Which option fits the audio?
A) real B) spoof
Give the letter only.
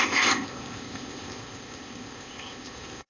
B